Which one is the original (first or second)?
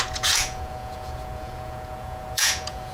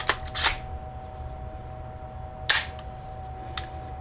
second